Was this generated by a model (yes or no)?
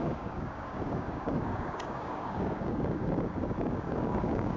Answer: yes